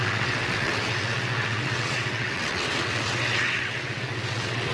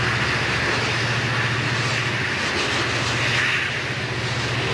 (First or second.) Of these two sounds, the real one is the second